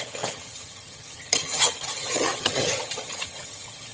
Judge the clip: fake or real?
fake